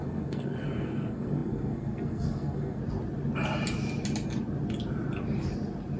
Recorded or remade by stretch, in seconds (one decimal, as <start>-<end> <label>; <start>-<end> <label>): 0.0-2.8 remade; 2.8-6.0 recorded